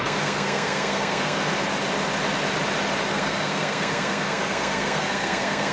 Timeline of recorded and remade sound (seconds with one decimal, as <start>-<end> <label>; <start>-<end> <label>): 0.0-1.5 remade; 1.5-3.1 recorded; 3.1-5.7 remade